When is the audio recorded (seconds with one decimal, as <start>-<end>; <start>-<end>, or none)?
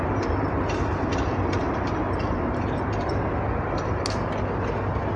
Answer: 0.0-1.6; 3.3-5.2